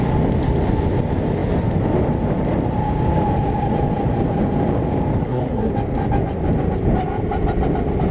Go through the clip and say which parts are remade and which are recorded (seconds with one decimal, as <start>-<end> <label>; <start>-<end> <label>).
0.0-5.2 recorded; 5.2-5.7 remade; 5.7-8.1 recorded